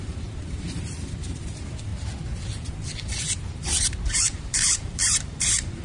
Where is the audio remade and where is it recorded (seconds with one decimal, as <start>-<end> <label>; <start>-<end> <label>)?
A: 0.0-1.9 remade; 1.9-2.7 recorded; 2.7-5.8 remade